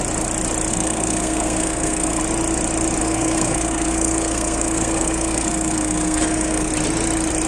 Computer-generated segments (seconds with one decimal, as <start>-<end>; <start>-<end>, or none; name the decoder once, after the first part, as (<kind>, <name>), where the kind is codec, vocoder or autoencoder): 0.7-2.2 (codec, SNAC); 3.0-6.7

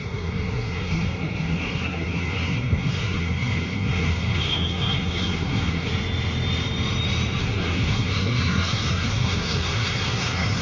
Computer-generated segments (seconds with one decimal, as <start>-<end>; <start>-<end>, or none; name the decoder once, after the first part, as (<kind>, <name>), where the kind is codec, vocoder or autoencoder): 0.0-5.9 (codec, SNAC); 7.4-10.6

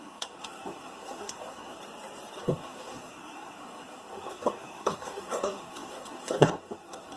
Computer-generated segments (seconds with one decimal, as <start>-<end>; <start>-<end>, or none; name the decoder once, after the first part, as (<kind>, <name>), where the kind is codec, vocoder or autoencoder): 0.0-1.8 (codec, SNAC); 2.4-7.2

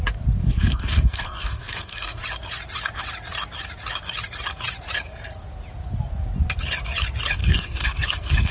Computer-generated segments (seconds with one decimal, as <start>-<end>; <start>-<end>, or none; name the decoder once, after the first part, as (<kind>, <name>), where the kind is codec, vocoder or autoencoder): 0.4-2.2 (codec, SNAC); 7.4-8.5

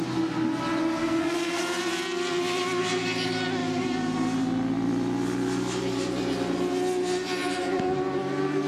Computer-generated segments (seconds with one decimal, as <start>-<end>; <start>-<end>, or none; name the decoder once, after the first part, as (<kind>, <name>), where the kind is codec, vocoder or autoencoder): 1.0-1.6 (codec, SNAC)

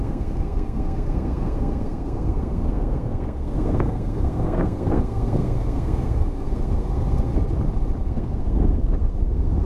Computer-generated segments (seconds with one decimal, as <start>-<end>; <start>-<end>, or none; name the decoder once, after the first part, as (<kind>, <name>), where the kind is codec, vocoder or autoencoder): 0.0-7.3 (codec, SNAC); 8.0-9.7

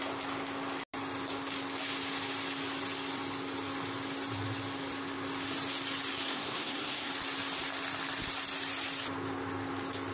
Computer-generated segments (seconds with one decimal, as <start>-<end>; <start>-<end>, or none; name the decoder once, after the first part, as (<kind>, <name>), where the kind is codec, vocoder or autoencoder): 6.3-7.1 (codec, SNAC)